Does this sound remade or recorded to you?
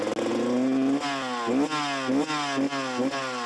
recorded